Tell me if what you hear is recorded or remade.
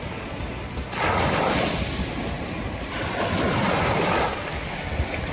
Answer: recorded